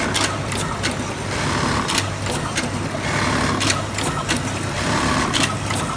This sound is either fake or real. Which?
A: real